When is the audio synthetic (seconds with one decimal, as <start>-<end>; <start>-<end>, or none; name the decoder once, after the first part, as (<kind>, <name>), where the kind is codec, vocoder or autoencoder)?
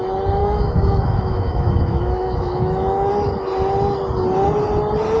0.4-3.1 (autoencoder, DAC-VAE)